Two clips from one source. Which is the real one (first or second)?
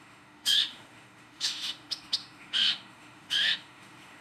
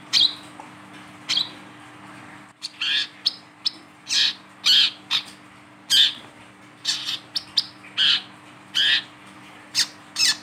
second